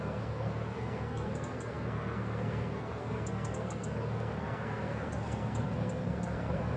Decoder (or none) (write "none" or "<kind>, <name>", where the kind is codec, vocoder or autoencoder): codec, SNAC